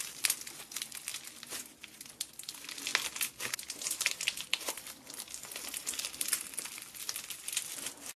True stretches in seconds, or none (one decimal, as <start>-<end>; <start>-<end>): 0.0-8.2

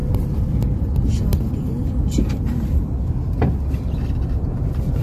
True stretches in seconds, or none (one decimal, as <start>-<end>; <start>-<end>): 0.0-5.0

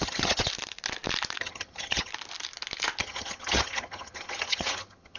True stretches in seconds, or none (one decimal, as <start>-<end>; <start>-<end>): 0.5-1.4; 2.1-3.0

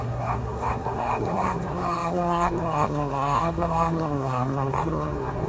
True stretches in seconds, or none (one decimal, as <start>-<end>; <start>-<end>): none